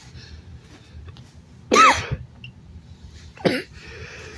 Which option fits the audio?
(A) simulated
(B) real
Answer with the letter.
B